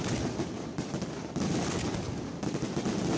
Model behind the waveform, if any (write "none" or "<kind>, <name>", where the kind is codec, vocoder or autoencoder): none